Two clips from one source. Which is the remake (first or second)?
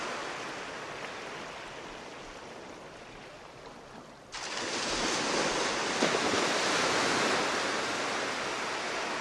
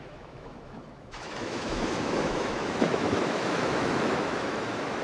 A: second